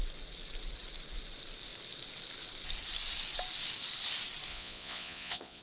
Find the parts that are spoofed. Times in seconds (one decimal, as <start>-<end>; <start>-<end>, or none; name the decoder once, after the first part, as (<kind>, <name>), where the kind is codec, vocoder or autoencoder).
4.5-5.6 (vocoder, Vocos)